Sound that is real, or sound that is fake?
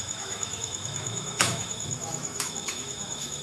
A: fake